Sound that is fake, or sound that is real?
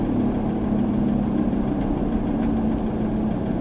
real